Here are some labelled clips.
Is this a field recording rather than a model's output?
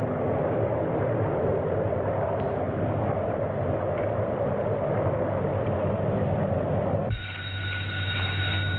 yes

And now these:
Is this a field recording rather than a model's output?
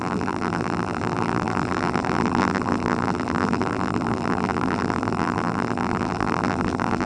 no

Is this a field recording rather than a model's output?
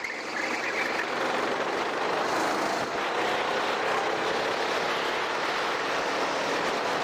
yes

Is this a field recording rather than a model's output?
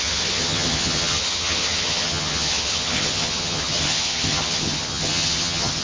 no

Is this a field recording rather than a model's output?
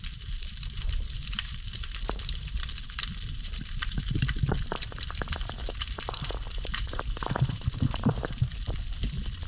no